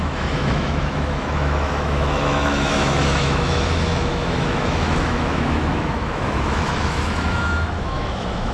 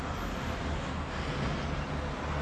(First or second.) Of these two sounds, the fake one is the first